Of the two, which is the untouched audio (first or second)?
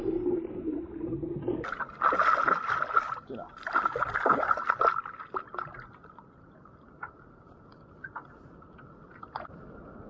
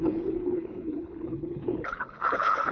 first